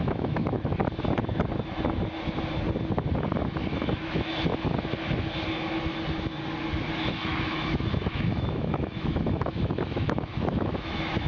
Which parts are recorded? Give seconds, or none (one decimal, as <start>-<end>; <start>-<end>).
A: 0.8-3.7; 4.5-7.1